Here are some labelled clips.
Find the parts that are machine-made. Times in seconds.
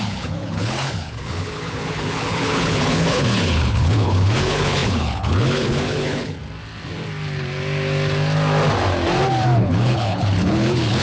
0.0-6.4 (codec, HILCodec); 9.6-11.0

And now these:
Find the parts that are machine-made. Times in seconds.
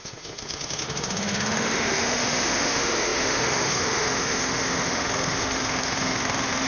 0.0-6.7 (autoencoder, DAC-VAE)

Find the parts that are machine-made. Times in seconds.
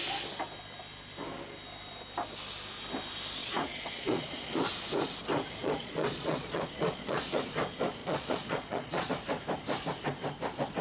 3.4-4.6 (vocoder, Vocos); 5.6-7.4; 8.0-9.1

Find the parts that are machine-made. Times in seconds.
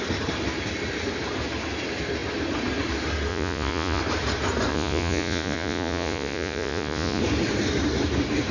3.3-4.0 (vocoder, Vocos); 4.7-7.2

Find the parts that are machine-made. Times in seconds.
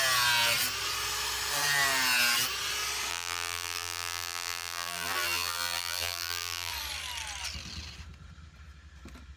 3.1-6.7 (vocoder, BigVGAN v2)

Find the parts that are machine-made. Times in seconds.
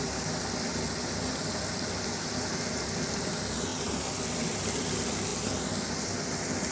none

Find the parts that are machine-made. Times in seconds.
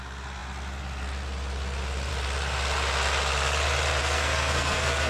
4.0-5.1 (codec, SNAC)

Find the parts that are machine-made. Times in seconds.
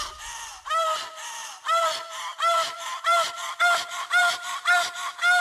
1.4-3.6 (vocoder, BigVGAN v2)